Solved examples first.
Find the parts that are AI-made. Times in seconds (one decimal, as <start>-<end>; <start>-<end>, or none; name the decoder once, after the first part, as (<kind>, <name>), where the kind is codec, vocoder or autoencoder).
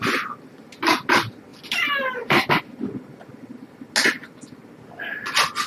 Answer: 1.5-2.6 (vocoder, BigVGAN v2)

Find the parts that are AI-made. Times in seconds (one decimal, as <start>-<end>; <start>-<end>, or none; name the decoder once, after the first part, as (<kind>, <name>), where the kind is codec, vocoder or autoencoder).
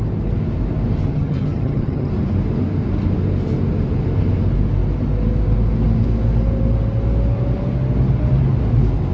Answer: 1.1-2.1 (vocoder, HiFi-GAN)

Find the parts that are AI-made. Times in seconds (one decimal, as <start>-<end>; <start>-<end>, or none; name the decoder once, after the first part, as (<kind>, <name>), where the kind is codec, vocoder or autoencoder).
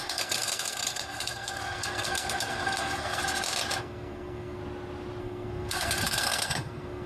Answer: 0.0-3.2 (codec, SNAC); 3.8-4.6; 5.2-7.1